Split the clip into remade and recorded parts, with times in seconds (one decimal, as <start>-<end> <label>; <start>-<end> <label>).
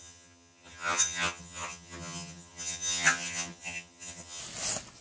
0.0-4.4 remade; 4.4-5.0 recorded